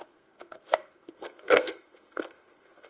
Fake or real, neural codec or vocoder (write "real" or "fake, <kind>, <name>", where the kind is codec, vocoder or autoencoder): fake, codec, SNAC